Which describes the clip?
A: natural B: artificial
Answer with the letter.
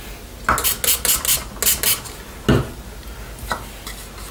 A